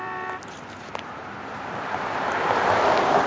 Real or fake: fake